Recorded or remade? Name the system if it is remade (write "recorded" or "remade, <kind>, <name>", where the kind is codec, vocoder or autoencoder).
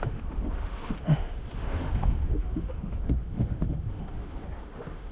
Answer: remade, autoencoder, DAC-VAE